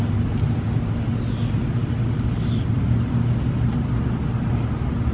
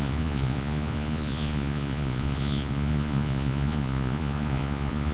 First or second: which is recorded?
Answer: first